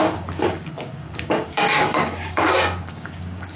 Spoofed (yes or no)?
yes